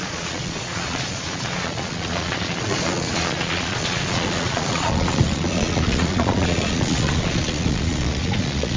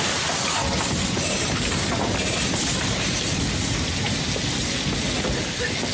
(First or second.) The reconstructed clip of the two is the first